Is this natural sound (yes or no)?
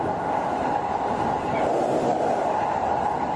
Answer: yes